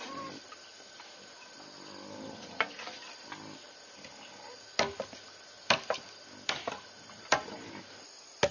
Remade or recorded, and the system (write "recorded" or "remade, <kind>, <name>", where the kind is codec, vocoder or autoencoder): recorded